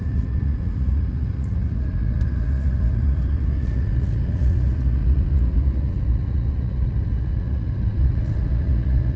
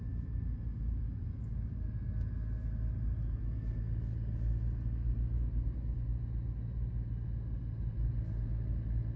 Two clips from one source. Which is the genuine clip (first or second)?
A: second